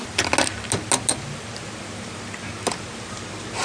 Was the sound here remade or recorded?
recorded